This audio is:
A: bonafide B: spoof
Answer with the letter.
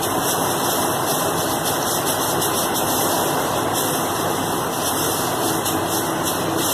A